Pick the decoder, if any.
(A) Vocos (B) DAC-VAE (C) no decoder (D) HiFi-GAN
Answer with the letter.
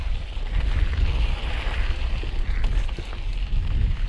C